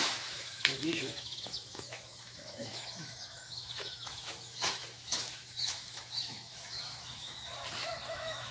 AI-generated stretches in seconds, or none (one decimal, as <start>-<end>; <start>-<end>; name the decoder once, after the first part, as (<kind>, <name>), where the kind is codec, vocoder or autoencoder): 0.0-7.5 (autoencoder, DAC-VAE); 8.1-8.5